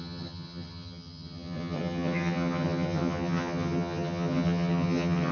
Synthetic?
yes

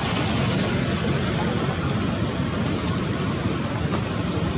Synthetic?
no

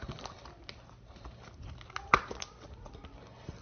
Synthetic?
no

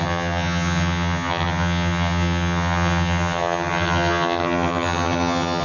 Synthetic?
yes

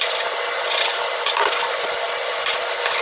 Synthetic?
no